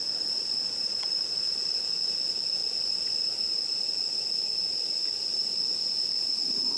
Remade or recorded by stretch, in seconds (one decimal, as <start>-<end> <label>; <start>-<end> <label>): 0.0-6.8 recorded